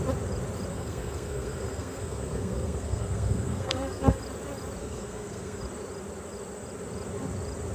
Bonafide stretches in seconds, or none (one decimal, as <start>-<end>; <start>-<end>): 0.0-0.7; 4.2-4.8; 5.6-7.7